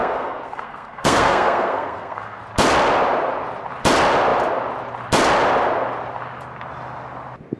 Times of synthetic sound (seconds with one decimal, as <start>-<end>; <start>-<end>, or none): 0.0-2.4